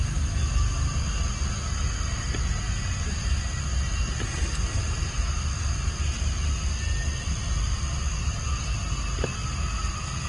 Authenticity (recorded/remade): recorded